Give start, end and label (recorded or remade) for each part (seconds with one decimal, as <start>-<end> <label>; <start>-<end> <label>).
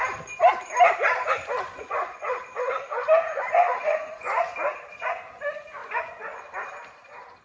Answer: 0.0-1.7 recorded; 1.7-2.4 remade; 2.4-3.3 recorded; 3.3-4.4 remade; 4.4-5.8 recorded; 5.8-6.4 remade; 6.4-7.4 recorded